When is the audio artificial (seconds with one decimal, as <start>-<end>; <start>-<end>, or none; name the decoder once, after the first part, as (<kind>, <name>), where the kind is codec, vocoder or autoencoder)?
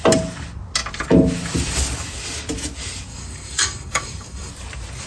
3.1-4.5 (codec, DAC)